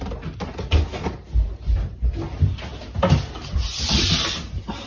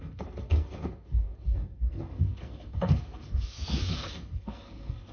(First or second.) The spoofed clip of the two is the second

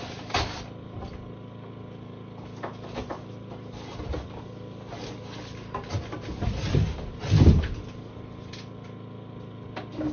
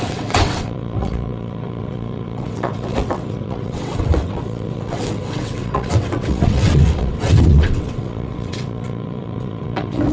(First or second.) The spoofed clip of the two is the second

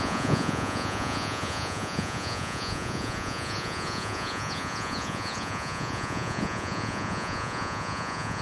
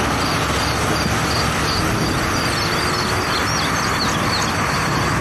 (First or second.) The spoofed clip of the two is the first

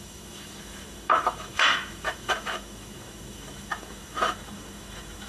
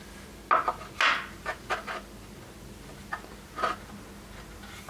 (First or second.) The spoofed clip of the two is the first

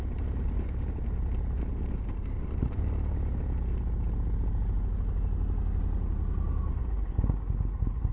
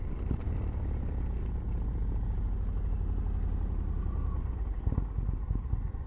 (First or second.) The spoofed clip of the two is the second